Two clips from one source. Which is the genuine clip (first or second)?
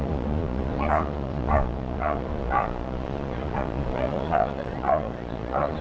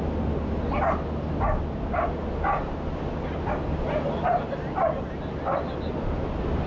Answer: second